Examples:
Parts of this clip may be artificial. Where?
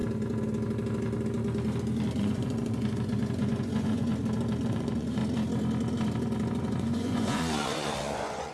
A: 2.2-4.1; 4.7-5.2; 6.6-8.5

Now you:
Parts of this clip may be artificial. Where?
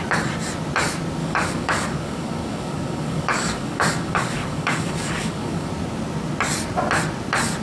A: 1.2-5.7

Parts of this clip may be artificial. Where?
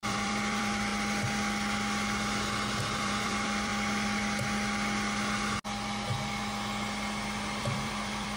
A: 0.0-0.9; 2.8-3.7; 7.6-8.4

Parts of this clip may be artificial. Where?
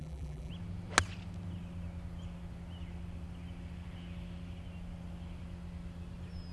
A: 0.0-0.5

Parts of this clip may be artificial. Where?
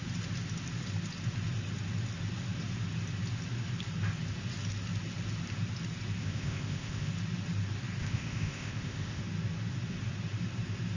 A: 6.2-7.1; 8.0-9.2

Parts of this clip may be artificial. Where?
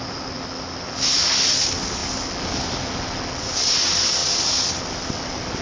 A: none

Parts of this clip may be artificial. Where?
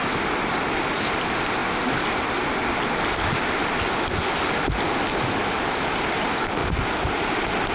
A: none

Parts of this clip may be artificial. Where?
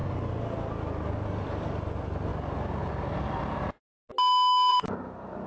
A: 1.1-2.3; 2.9-3.8; 4.7-5.5